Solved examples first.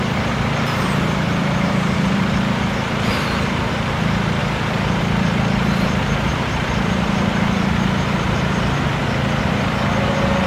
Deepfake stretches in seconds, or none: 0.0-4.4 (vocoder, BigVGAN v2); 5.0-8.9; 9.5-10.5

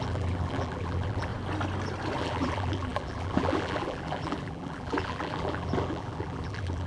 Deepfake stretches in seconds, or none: 0.0-1.3 (vocoder, BigVGAN v2); 2.2-6.9

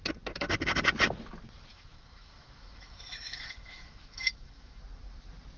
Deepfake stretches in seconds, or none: 1.7-4.8 (autoencoder, DAC-VAE)

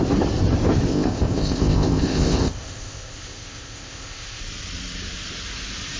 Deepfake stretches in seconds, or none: 0.9-4.4 (codec, ZipCodec)

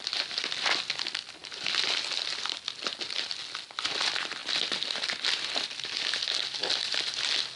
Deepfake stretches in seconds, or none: none

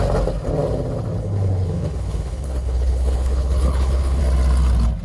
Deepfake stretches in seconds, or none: 1.2-4.2 (codec, HILCodec)

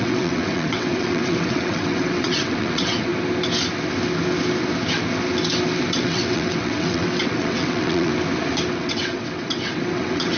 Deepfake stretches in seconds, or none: 0.0-3.1 (vocoder, WaveNeXt); 5.9-8.1; 8.7-10.4

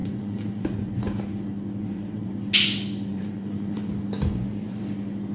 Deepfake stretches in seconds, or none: 0.0-1.0 (vocoder, Vocos); 1.8-2.3; 3.1-3.9; 4.3-4.8